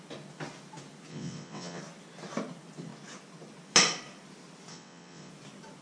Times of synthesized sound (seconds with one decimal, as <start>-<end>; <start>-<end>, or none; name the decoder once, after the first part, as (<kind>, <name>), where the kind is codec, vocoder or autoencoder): 1.1-1.8 (vocoder, WaveNeXt); 4.7-5.3